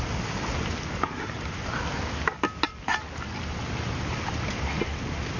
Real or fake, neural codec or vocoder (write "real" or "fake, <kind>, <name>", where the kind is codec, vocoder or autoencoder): real